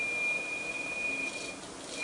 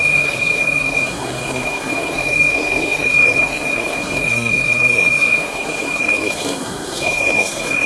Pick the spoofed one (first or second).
second